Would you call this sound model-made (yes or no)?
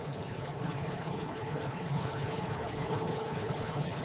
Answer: yes